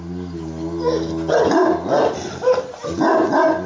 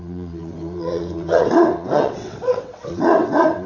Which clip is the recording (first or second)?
first